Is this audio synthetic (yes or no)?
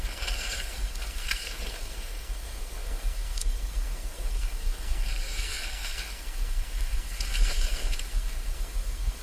yes